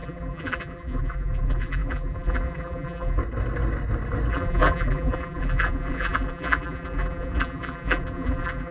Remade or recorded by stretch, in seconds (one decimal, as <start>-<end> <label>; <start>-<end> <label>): 0.0-3.2 remade; 3.2-4.3 recorded; 4.3-8.7 remade